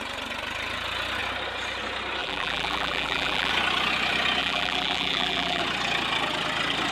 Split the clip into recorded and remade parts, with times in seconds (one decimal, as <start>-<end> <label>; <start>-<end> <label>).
0.0-2.2 recorded; 2.2-3.5 remade; 3.5-4.4 recorded; 4.4-5.6 remade; 5.6-6.9 recorded